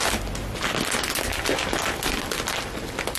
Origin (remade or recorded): recorded